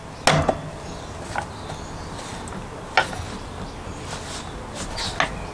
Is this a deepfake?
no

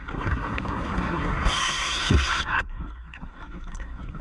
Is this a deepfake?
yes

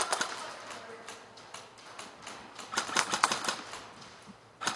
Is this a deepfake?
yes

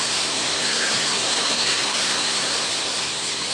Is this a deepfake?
yes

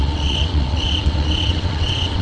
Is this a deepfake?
yes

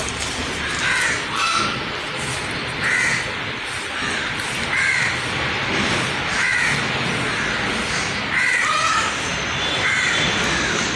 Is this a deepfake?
no